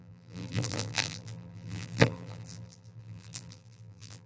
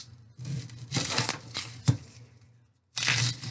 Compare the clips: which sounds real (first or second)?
second